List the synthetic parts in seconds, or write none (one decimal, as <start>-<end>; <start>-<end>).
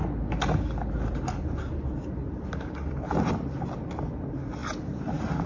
none